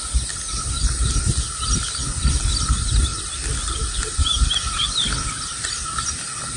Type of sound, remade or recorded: recorded